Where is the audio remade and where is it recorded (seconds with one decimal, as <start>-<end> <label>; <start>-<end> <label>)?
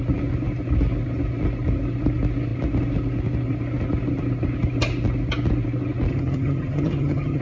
0.0-6.1 recorded; 6.1-7.4 remade